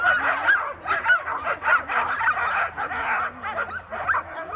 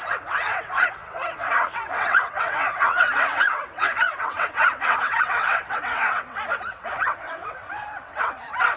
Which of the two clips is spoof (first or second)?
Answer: second